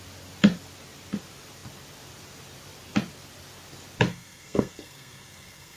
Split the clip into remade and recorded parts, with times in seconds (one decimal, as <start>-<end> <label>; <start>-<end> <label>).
0.0-4.1 recorded; 4.1-5.8 remade